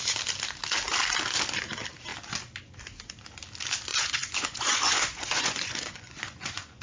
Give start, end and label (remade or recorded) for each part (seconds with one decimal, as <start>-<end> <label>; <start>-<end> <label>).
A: 0.0-3.9 recorded; 3.9-6.8 remade